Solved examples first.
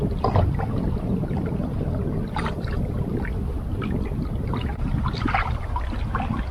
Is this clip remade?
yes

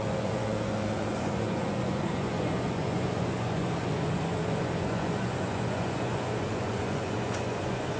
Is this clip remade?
yes